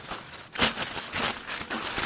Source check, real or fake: real